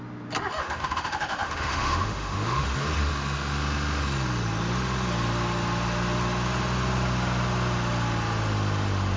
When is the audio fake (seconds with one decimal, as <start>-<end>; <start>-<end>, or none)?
0.6-2.6